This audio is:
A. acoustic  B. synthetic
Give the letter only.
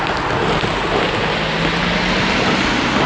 A